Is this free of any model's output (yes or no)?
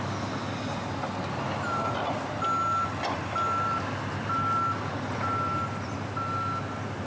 yes